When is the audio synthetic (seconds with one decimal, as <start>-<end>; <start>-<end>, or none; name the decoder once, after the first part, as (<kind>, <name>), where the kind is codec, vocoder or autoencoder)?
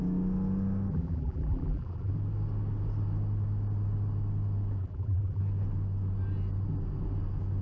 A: 0.9-2.1 (vocoder, BigVGAN v2); 4.8-5.4